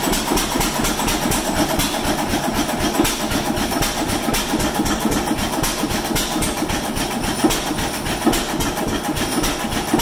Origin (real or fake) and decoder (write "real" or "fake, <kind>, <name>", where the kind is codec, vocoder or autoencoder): real